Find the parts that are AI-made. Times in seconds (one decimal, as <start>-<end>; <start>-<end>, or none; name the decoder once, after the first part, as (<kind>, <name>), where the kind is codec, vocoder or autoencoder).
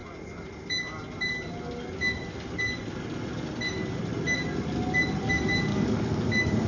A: 5.7-6.7 (codec, DAC)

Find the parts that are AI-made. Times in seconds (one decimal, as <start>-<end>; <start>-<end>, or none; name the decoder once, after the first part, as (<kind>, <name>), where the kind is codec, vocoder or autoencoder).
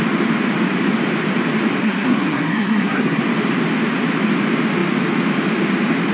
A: 1.8-3.2 (codec, SNAC)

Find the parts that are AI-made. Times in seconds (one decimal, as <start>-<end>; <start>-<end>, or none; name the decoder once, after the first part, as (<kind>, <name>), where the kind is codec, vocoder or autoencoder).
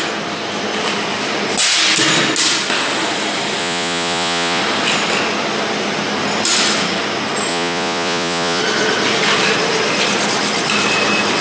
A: 3.6-4.6 (vocoder, Vocos); 7.5-8.6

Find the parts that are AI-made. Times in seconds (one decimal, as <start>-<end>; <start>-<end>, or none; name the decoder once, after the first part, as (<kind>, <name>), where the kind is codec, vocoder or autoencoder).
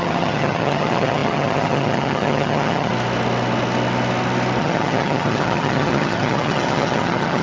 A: 0.0-2.9 (vocoder, HiFi-GAN); 4.6-7.4